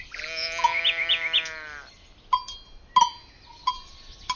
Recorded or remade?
recorded